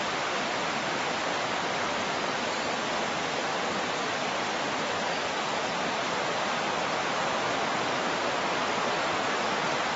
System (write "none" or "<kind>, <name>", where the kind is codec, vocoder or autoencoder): vocoder, BigVGAN v2